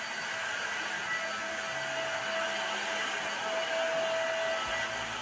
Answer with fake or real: real